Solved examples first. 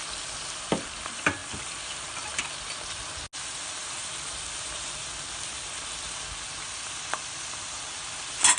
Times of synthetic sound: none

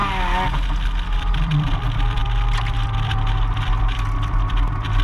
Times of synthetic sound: 1.2-5.0 (vocoder, BigVGAN v2)

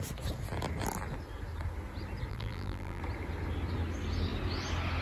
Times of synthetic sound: 2.3-3.0 (vocoder, BigVGAN v2)